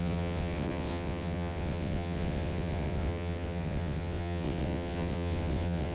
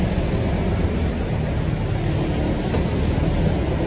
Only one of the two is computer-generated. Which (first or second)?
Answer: first